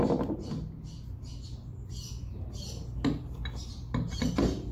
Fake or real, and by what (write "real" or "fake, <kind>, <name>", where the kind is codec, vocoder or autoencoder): real